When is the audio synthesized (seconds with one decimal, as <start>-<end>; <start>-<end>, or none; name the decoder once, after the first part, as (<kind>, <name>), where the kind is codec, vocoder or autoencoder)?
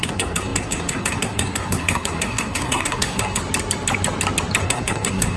0.0-3.4 (codec, SNAC); 4.6-5.4